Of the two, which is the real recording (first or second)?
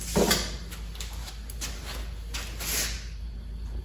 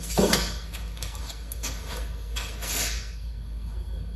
first